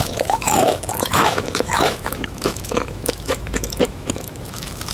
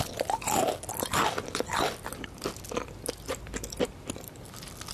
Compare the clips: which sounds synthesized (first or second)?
first